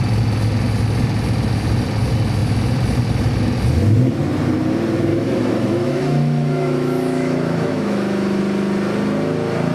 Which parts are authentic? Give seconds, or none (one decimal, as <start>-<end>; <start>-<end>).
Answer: 0.0-5.1; 8.4-9.7